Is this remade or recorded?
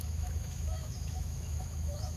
remade